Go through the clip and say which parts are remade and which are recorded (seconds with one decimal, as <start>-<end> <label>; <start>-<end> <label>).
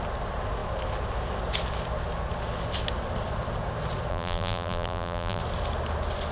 0.0-4.1 recorded; 4.1-5.4 remade; 5.4-6.3 recorded